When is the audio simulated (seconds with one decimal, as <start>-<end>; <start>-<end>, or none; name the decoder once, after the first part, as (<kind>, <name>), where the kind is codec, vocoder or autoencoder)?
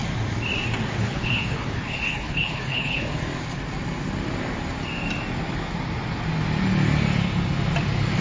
1.0-3.1 (codec, HILCodec)